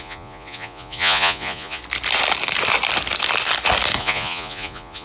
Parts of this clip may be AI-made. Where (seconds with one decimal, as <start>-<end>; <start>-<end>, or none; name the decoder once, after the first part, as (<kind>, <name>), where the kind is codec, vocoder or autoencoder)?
0.0-1.8 (vocoder, Vocos); 4.0-5.0